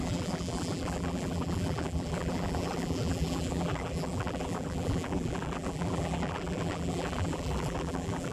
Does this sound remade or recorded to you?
remade